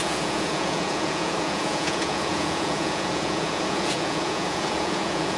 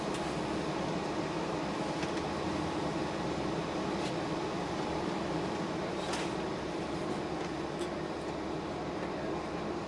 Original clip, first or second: second